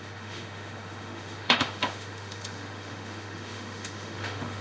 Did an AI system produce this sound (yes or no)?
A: yes